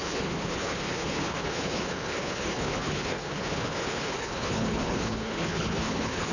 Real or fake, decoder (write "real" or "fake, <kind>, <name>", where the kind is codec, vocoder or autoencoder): fake, codec, HILCodec